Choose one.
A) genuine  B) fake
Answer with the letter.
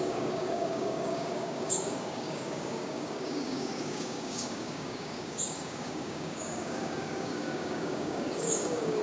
B